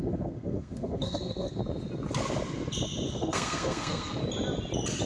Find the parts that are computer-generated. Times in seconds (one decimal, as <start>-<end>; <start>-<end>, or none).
0.0-1.6; 3.1-4.2